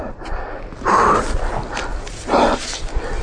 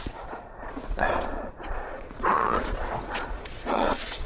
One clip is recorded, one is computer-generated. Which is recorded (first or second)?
first